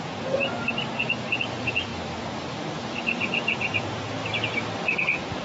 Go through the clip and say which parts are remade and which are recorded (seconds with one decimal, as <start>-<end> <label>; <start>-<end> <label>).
0.0-0.4 remade; 0.4-1.1 recorded; 1.1-1.9 remade; 1.9-2.7 recorded; 2.7-4.2 remade; 4.2-5.0 recorded; 5.0-5.4 remade

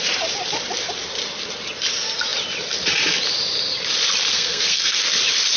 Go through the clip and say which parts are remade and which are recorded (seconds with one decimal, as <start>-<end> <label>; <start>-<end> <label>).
0.0-4.3 recorded; 4.3-5.0 remade; 5.0-5.6 recorded

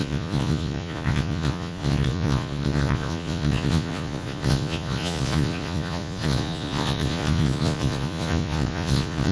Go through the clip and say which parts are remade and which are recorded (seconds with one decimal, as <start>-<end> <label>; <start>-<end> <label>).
0.0-9.3 remade